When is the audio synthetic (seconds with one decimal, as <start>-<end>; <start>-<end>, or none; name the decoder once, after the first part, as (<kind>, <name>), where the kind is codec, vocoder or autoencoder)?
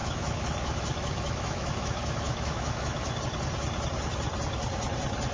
0.0-3.2 (autoencoder, DAC-VAE)